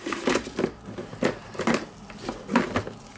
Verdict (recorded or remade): recorded